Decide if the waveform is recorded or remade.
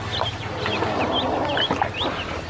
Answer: recorded